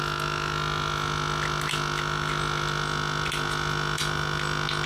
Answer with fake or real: real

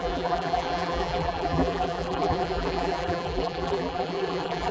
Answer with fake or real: fake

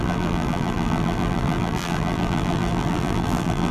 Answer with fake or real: fake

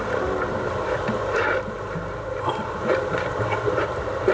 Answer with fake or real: fake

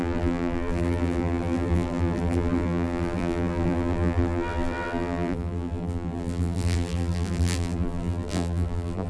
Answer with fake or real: fake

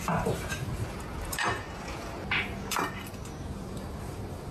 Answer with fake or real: fake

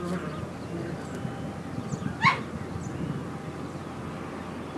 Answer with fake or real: real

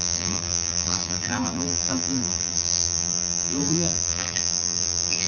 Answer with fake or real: fake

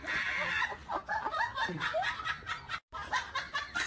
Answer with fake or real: fake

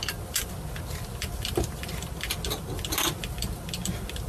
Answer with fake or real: real